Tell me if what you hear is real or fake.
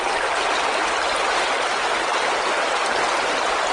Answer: real